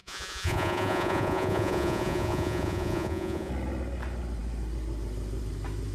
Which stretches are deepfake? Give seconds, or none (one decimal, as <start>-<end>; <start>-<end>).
0.0-3.5